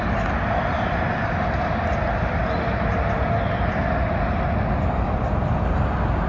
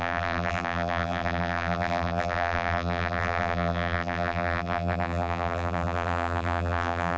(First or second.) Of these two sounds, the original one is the first